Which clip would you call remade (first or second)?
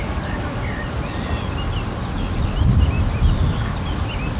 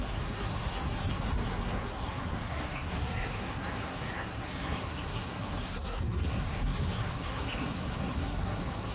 second